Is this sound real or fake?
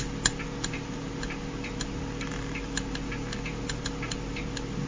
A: real